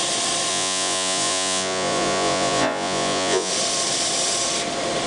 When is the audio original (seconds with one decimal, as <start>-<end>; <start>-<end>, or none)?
0.0-0.5; 3.5-5.1